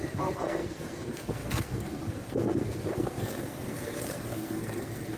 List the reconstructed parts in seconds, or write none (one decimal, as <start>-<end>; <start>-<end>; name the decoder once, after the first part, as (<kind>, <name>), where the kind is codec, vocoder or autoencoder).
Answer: 0.0-5.2 (codec, SNAC)